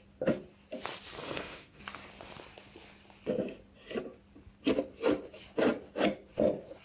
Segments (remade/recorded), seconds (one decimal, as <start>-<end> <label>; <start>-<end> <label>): 0.0-1.2 recorded; 1.2-1.8 remade; 1.8-6.8 recorded

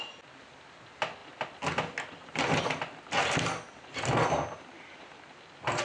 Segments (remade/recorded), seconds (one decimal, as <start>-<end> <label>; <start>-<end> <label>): 0.0-5.8 recorded

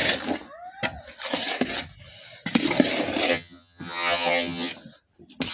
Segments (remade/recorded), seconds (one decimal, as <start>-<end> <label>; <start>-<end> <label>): 0.0-3.3 recorded; 3.3-4.7 remade; 4.7-5.5 recorded

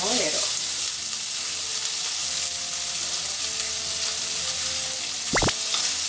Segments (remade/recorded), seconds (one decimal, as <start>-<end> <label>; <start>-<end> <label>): 0.0-6.1 recorded

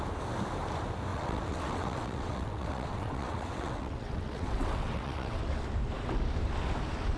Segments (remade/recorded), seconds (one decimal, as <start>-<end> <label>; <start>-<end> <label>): 0.0-1.1 recorded; 1.1-5.4 remade; 5.4-7.2 recorded

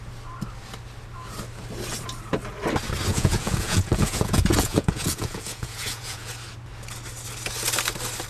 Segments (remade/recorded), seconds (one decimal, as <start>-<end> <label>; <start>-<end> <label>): 0.0-3.1 recorded; 3.1-6.3 remade; 6.3-8.3 recorded

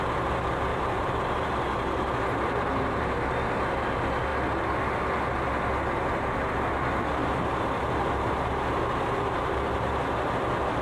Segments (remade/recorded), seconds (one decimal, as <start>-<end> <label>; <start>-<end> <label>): 0.0-0.7 recorded; 0.7-3.3 remade; 3.3-7.2 recorded; 7.2-9.5 remade; 9.5-10.8 recorded